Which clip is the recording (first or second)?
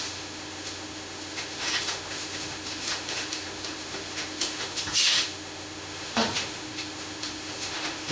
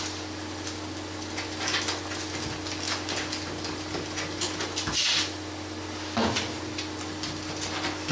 second